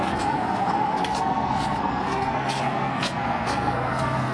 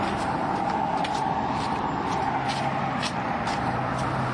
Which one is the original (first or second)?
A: second